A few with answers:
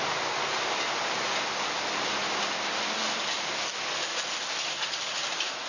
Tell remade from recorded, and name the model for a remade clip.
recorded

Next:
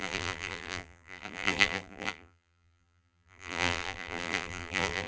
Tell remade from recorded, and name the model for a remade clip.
remade, vocoder, BigVGAN v2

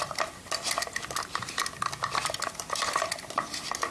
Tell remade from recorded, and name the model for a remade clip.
recorded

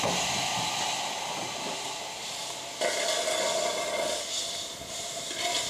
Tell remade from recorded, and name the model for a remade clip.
recorded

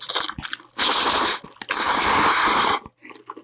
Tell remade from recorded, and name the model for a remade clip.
recorded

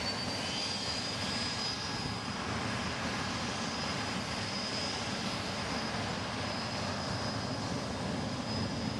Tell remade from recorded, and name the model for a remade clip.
recorded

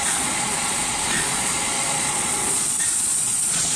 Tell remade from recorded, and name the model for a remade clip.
remade, vocoder, Vocos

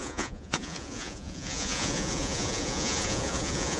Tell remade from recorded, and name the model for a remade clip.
remade, vocoder, Vocos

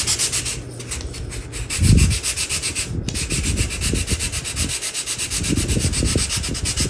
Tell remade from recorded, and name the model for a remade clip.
recorded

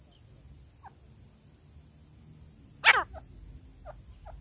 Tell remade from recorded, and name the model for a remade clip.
recorded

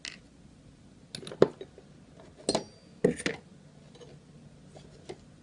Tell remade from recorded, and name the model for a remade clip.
recorded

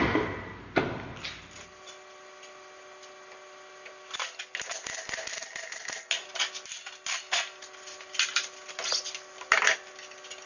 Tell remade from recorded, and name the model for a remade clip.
recorded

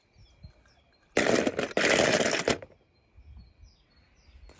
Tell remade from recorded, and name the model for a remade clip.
recorded